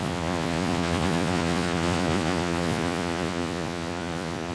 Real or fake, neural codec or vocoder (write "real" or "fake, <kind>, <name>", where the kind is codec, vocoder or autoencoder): fake, vocoder, Vocos